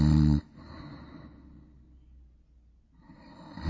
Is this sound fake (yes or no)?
no